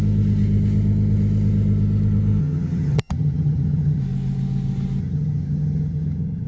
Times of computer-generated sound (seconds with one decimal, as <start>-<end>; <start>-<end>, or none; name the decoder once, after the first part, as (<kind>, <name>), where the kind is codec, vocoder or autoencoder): 2.4-4.0 (vocoder, HiFi-GAN); 5.0-6.5